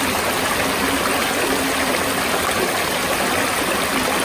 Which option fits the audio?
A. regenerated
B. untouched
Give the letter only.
B